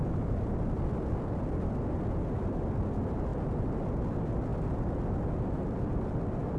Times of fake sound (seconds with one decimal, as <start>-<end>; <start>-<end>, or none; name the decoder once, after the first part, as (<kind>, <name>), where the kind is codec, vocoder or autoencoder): none